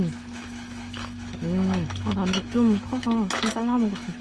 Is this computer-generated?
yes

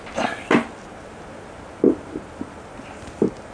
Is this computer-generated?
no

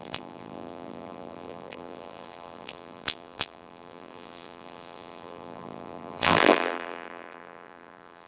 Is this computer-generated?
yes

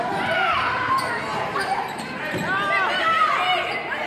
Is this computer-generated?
no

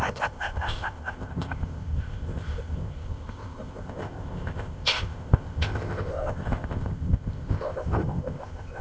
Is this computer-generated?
yes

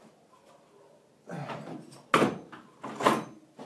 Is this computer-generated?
no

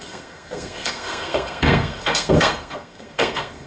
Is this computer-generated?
yes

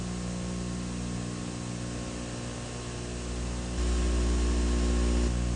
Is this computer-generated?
no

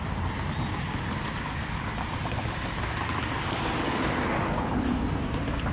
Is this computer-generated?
no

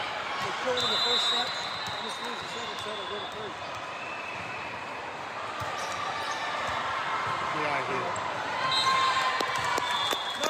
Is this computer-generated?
no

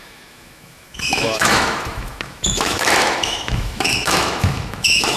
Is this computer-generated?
yes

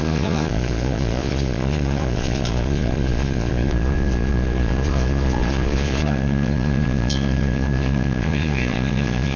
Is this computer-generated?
yes